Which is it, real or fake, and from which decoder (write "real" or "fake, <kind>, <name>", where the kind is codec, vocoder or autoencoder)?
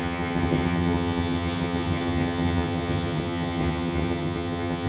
fake, vocoder, HiFi-GAN